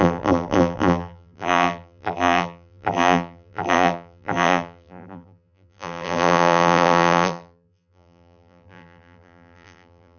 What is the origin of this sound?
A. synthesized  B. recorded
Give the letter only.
A